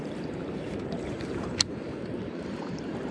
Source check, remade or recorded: remade